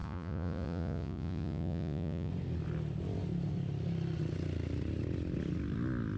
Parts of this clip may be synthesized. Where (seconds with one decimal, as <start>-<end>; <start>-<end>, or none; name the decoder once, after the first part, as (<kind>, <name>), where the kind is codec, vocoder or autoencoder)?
0.0-2.3 (vocoder, Vocos)